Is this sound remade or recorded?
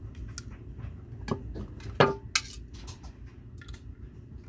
recorded